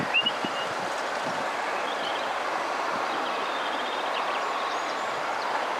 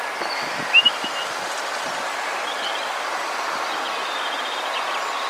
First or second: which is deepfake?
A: first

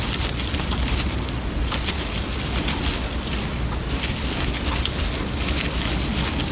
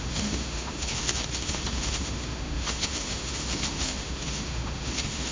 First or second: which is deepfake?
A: second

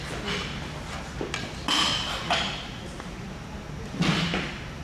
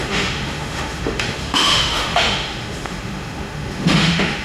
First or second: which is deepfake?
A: second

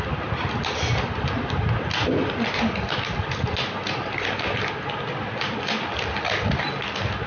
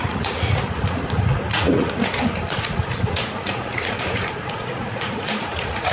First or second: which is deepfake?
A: second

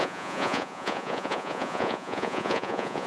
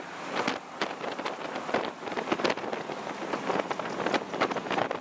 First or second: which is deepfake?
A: first